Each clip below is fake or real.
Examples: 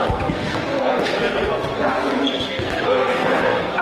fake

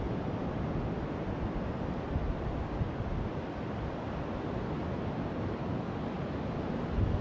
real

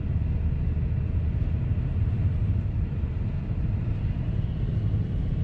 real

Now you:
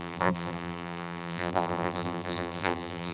fake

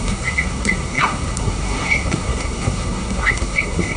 fake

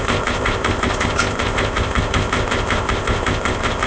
fake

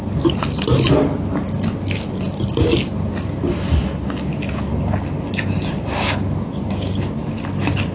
real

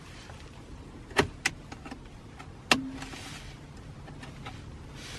real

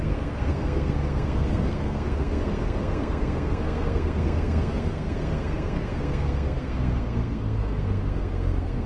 fake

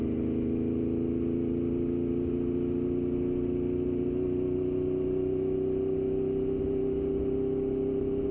real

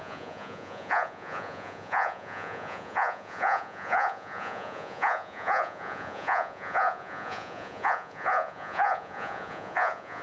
fake